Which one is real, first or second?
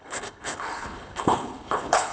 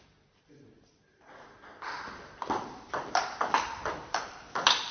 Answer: second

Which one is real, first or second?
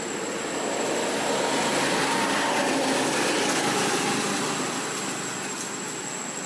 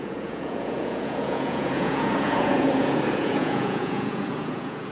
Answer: first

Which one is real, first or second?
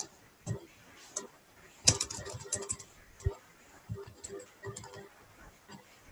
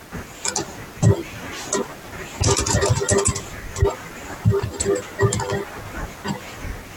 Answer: second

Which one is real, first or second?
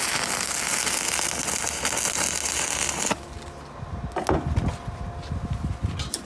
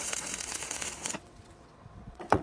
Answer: first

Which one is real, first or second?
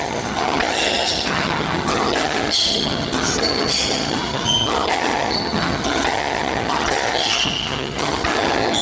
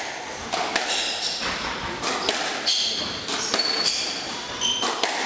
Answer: second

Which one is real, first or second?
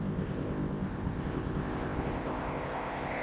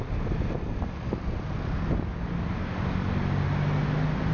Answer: second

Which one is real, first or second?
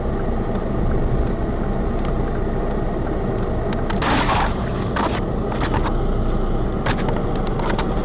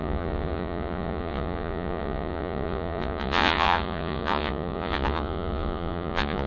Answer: first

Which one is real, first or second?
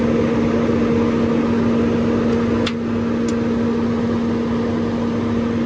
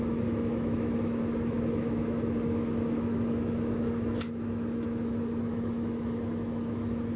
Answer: first